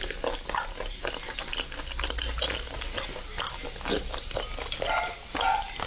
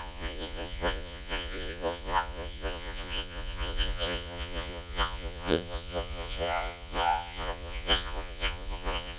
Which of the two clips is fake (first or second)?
second